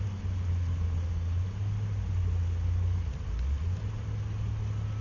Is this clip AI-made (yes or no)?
no